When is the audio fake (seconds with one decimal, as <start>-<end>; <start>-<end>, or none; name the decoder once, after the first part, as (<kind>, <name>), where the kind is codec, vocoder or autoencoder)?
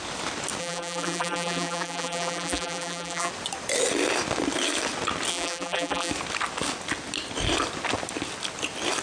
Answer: 0.6-3.3 (vocoder, BigVGAN v2); 5.3-6.1